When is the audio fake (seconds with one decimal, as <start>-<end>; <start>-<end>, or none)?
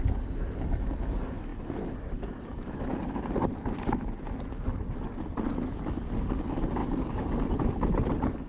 none